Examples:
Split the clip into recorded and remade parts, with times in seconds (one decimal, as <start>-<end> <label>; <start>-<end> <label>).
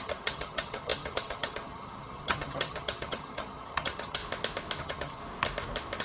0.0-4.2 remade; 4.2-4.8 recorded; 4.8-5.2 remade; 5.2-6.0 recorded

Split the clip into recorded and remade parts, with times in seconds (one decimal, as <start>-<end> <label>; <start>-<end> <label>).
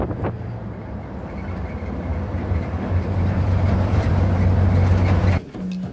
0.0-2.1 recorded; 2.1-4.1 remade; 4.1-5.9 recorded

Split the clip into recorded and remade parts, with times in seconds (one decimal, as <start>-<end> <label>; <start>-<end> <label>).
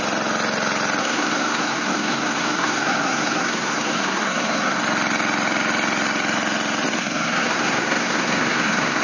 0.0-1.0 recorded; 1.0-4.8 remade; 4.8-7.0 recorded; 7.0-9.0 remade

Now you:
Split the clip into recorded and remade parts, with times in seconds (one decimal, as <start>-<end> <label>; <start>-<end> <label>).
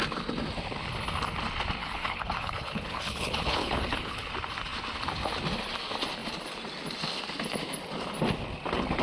0.0-1.8 recorded; 1.8-4.3 remade; 4.3-9.0 recorded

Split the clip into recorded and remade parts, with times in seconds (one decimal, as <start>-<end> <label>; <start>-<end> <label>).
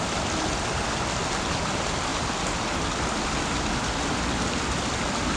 0.0-5.4 recorded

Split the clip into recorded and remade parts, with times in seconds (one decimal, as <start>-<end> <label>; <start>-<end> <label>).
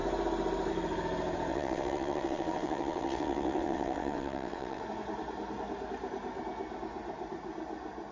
0.0-1.5 recorded; 1.5-4.8 remade; 4.8-8.1 recorded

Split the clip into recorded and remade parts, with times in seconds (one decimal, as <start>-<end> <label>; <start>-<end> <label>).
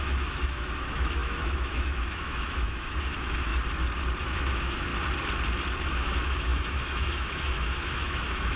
0.0-3.5 remade; 3.5-4.2 recorded; 4.2-4.9 remade; 4.9-5.8 recorded; 5.8-8.6 remade